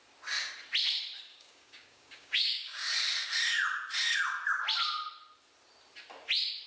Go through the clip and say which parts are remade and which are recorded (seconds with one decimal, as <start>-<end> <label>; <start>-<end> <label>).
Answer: 0.0-1.3 recorded; 1.3-2.9 remade; 2.9-6.7 recorded